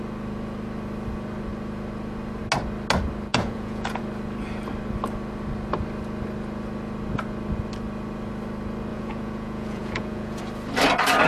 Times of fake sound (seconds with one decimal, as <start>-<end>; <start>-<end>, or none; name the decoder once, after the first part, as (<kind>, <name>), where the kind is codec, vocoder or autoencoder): 3.3-4.0 (vocoder, Vocos); 8.9-10.4